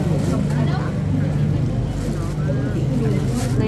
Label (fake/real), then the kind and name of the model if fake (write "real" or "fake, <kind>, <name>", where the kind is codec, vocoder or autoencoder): real